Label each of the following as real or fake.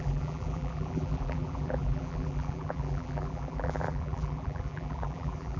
fake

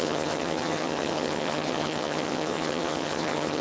fake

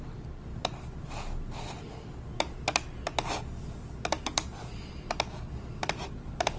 real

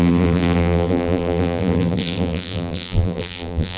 fake